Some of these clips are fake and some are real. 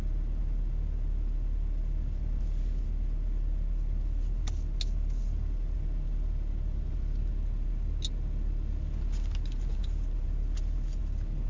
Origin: real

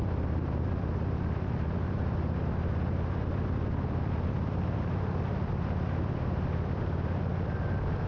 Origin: fake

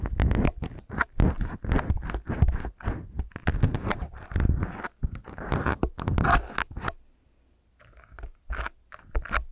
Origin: real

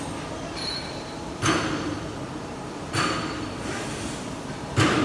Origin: fake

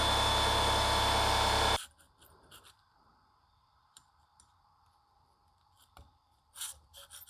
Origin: fake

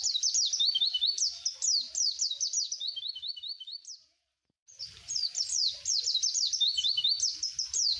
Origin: real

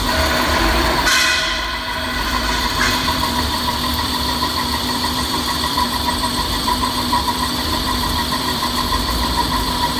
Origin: fake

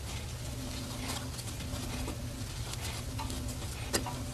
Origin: real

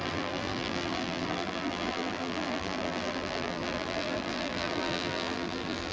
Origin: fake